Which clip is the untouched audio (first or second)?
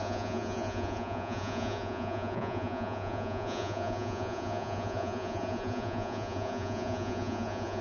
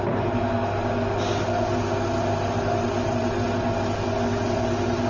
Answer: second